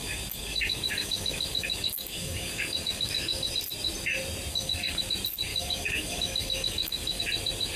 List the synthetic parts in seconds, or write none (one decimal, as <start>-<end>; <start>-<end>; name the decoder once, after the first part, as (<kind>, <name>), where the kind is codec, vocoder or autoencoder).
0.0-3.5 (codec, DAC); 4.5-5.0; 5.5-7.2